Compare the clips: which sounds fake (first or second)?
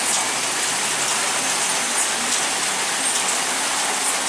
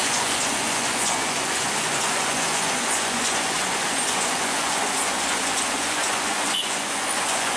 second